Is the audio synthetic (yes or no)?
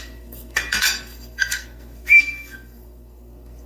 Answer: yes